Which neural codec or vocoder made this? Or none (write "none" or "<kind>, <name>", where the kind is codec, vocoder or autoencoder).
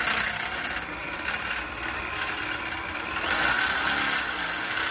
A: none